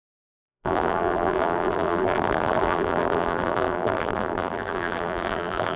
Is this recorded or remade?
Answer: remade